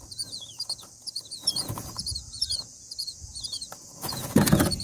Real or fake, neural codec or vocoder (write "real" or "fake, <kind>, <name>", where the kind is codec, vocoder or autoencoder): fake, vocoder, Vocos